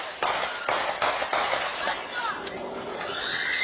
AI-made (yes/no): no